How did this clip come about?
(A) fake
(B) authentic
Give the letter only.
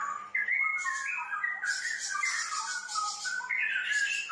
B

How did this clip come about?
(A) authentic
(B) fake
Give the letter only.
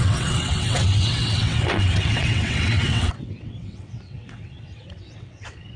B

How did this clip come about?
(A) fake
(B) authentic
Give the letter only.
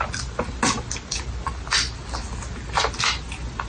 B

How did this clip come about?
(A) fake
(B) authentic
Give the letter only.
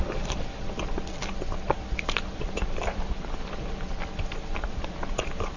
B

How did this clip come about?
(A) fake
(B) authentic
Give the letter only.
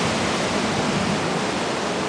B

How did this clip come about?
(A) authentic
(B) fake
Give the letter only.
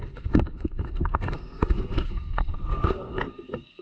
B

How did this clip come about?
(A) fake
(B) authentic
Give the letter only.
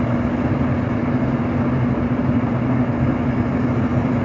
B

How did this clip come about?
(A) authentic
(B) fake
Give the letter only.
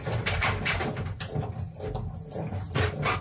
A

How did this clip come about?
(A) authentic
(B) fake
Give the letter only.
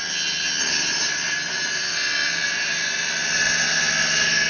A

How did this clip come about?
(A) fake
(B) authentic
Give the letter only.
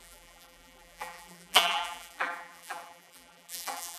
A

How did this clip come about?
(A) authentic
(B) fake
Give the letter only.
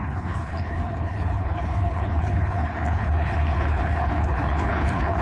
B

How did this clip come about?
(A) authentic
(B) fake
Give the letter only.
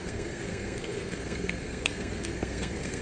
B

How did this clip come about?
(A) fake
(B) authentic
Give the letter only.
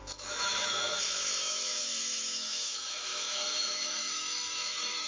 A